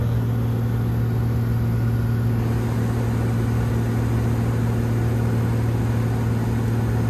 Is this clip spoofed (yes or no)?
no